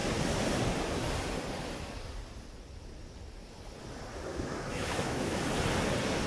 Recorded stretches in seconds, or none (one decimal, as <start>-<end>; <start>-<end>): 0.0-4.3; 5.4-6.3